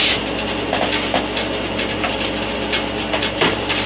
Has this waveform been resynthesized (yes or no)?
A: no